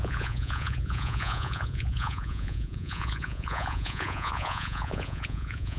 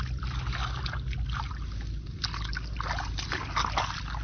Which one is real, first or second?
second